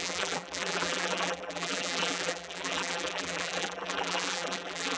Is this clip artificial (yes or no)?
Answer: yes